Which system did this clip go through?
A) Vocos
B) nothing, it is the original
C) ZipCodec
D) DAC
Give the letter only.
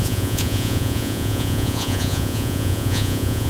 A